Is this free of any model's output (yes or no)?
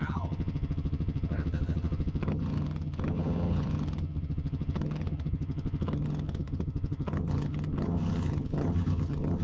no